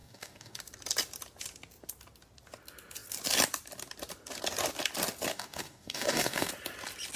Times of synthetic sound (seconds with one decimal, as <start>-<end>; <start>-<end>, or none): 0.0-0.6; 5.3-6.5